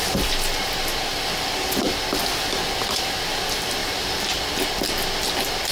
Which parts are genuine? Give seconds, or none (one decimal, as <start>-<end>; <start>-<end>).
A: 0.0-5.7